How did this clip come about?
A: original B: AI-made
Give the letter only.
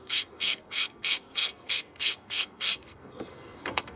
B